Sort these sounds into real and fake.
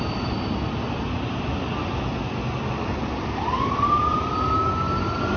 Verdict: real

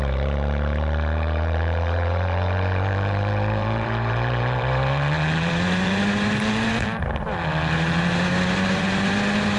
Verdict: fake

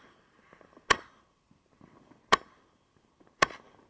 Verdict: real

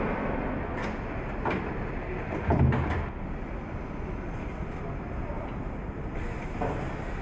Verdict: real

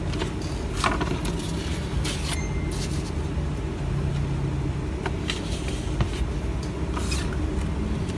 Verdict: real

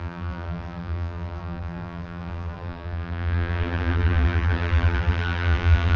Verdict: fake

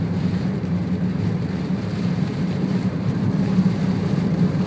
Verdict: fake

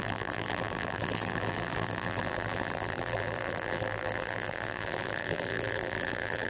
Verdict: fake